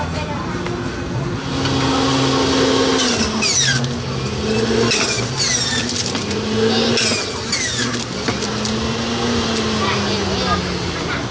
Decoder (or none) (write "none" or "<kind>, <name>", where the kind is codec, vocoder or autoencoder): none